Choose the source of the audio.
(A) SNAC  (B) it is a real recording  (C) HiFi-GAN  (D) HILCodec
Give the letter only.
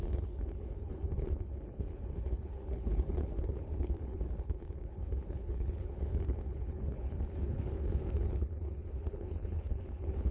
D